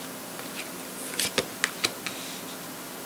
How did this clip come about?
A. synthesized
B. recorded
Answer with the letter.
B